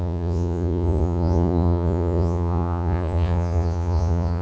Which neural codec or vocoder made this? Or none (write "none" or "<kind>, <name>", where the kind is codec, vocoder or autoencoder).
vocoder, Vocos